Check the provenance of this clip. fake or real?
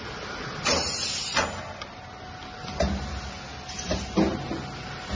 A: real